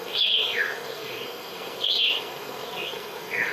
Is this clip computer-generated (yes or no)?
yes